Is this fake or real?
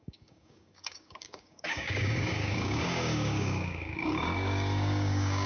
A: fake